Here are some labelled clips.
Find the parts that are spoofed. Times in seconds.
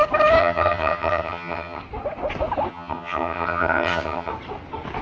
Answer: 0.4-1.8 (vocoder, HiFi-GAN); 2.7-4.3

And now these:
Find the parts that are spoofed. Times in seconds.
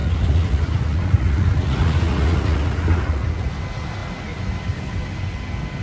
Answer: 0.0-3.5 (vocoder, Vocos)